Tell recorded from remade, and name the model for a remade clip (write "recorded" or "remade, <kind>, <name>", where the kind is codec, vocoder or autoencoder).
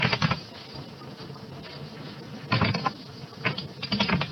recorded